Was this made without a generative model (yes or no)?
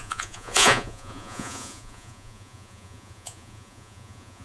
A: no